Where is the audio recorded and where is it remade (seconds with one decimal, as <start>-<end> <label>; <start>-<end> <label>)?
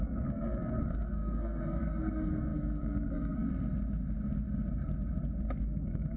0.0-3.5 remade; 3.5-5.6 recorded; 5.6-6.2 remade